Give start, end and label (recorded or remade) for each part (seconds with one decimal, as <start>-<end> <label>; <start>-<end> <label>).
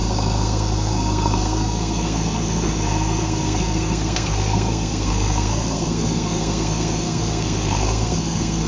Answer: 0.0-8.7 remade